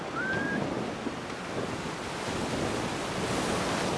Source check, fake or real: real